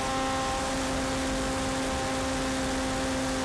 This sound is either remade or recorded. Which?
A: recorded